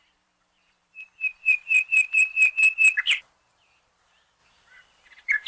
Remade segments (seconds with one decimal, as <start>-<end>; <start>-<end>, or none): 0.0-2.3; 3.0-5.5